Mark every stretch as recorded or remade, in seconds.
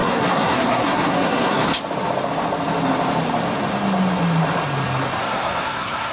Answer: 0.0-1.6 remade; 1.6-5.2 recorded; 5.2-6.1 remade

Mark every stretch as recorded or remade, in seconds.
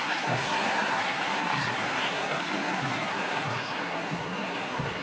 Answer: 0.0-5.0 remade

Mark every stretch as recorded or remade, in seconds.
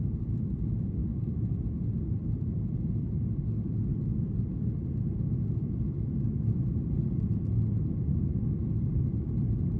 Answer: 0.0-9.8 recorded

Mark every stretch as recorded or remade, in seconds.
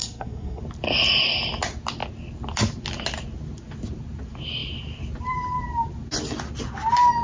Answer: 0.0-0.6 remade; 0.6-7.2 recorded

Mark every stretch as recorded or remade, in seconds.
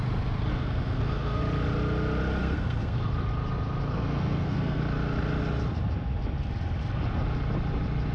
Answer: 0.0-0.5 recorded; 0.5-1.4 remade; 1.4-2.4 recorded; 2.4-3.0 remade; 3.0-3.9 recorded; 3.9-4.8 remade; 4.8-8.1 recorded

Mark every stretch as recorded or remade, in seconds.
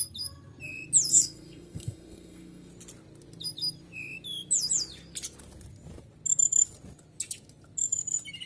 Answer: 0.0-1.1 recorded; 1.1-2.7 remade; 2.7-8.5 recorded